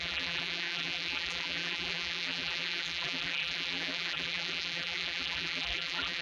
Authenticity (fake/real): fake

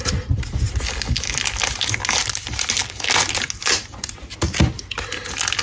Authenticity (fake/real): real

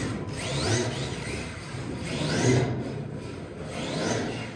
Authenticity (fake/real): real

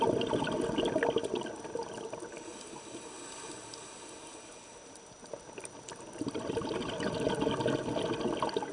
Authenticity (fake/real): real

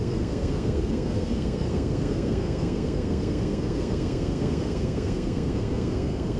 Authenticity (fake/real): fake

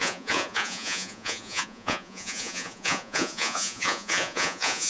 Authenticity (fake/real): fake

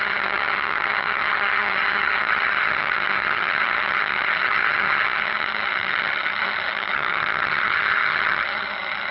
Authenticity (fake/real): fake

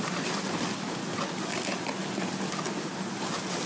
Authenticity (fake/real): real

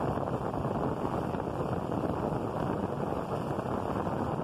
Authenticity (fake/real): real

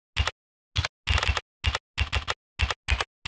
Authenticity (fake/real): real